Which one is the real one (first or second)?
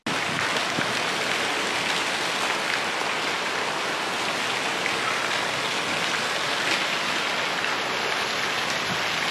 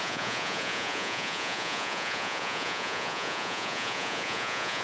first